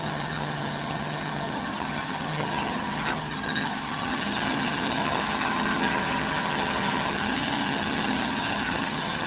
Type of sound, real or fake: fake